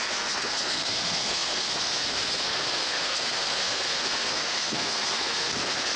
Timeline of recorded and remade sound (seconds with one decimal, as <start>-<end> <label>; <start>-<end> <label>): 0.0-6.0 remade